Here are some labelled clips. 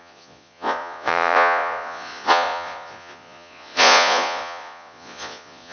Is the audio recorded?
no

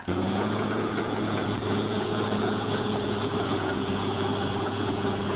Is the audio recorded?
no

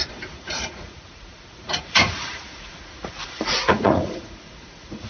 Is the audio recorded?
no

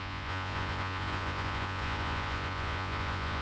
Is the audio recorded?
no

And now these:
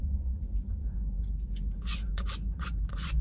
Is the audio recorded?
no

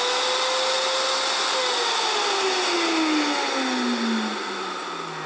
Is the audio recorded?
yes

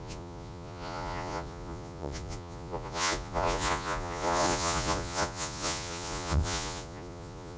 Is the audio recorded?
no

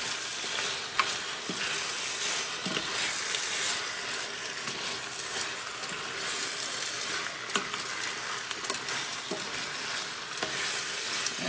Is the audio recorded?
yes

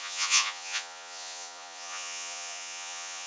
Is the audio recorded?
no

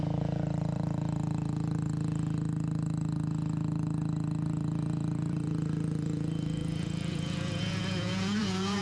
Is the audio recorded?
no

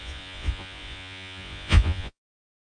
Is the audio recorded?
no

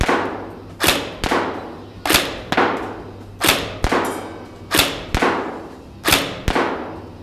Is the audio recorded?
yes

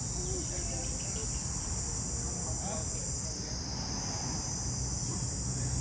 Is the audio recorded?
yes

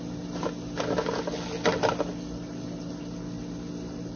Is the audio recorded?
yes